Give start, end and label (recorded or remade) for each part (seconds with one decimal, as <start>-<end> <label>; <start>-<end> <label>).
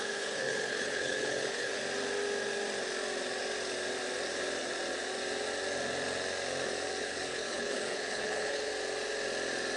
0.0-1.8 remade; 1.8-7.0 recorded; 7.0-8.7 remade; 8.7-9.8 recorded